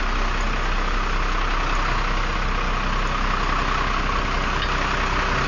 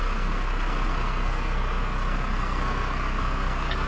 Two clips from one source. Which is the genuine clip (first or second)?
first